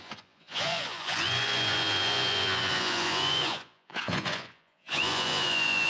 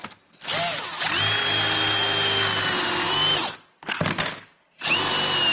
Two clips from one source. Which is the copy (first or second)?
first